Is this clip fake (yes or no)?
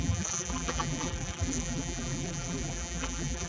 yes